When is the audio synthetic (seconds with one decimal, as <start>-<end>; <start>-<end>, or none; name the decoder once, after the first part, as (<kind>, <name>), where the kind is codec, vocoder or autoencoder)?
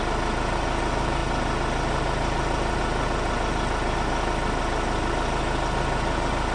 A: none